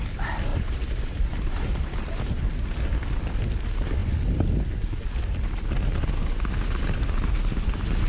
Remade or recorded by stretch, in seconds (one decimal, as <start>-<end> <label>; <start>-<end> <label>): 0.0-0.5 recorded; 0.5-2.7 remade; 2.7-8.1 recorded